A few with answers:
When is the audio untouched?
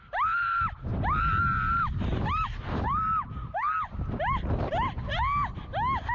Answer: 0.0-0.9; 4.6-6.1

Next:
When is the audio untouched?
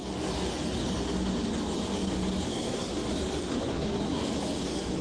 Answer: 0.0-2.5; 2.9-3.6; 4.2-5.0